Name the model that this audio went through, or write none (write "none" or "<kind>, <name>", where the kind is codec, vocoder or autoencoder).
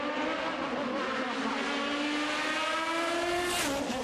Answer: none